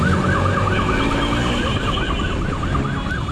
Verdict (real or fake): real